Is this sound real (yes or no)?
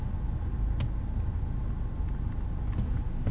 yes